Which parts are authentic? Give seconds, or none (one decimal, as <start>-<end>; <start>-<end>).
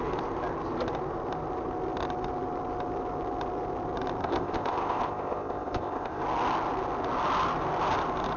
0.0-4.2; 6.2-8.4